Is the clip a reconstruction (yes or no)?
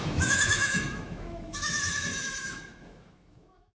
yes